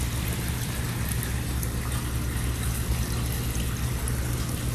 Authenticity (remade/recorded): recorded